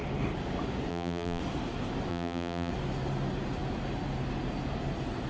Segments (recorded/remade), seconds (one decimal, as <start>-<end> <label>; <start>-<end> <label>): 0.0-0.9 recorded; 0.9-1.4 remade; 1.4-2.1 recorded; 2.1-2.7 remade; 2.7-5.3 recorded